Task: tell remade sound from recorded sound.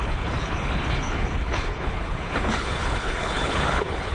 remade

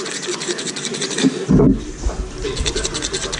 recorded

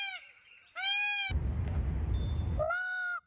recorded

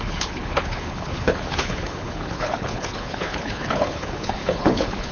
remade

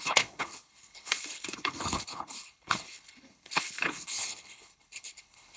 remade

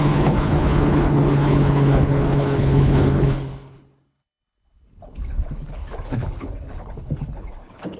remade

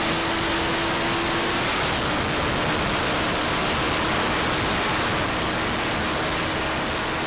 recorded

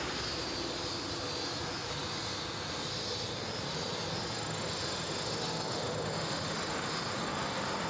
recorded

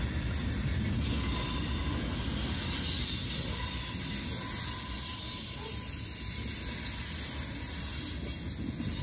recorded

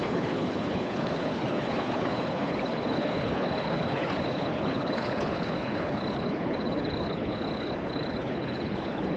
remade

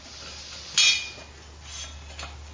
recorded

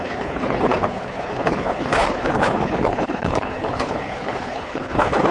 remade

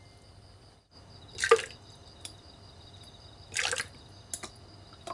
recorded